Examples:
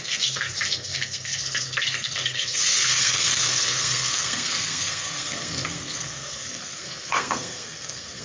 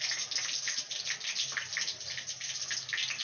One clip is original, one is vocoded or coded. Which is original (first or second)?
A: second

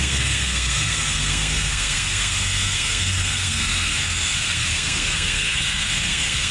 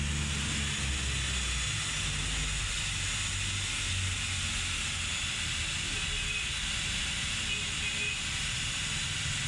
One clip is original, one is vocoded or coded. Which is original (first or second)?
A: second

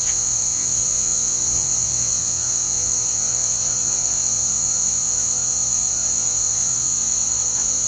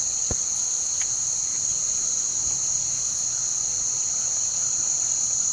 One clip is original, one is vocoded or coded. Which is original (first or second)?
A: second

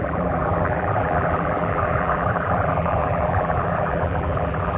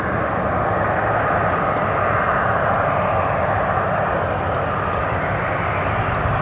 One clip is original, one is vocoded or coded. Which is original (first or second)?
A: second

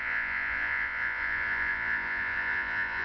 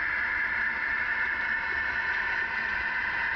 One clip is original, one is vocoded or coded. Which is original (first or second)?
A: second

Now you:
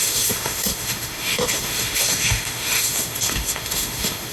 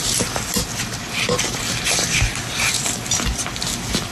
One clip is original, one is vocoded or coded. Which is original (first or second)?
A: second